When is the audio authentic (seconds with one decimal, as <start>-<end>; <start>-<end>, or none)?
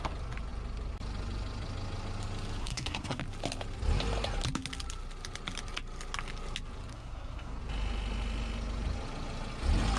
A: 0.0-2.6; 3.2-6.9; 7.6-10.0